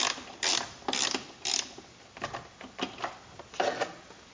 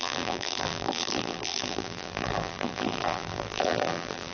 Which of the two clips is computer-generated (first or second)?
second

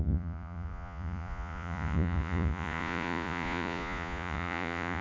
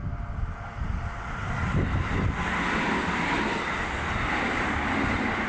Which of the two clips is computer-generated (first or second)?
first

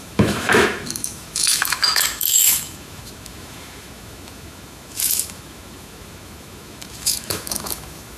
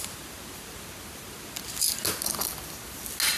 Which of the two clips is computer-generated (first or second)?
first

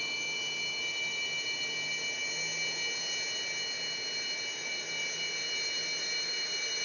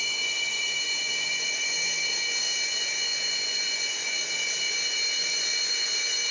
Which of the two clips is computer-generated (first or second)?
second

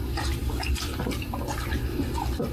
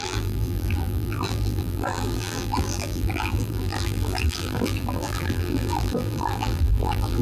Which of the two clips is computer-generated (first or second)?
second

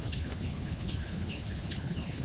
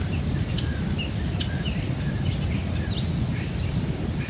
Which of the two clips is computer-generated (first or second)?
first